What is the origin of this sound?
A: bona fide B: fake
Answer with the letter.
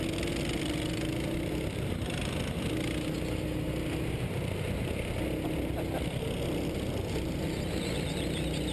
A